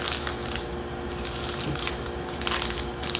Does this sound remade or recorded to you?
recorded